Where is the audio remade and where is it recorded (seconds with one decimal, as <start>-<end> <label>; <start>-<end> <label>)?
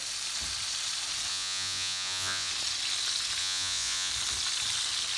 0.0-1.3 recorded; 1.3-2.5 remade; 2.5-3.4 recorded; 3.4-4.1 remade; 4.1-5.2 recorded